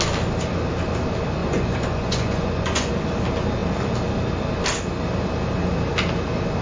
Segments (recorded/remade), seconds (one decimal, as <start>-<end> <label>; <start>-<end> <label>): 0.0-1.4 recorded; 1.4-2.9 remade; 2.9-6.6 recorded